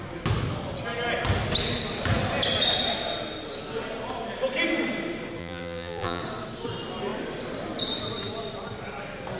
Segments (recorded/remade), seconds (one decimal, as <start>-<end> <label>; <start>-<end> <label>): 0.0-5.4 recorded; 5.4-6.2 remade; 6.2-9.4 recorded